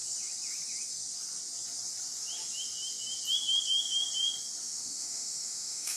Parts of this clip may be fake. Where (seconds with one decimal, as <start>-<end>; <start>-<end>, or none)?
4.6-6.0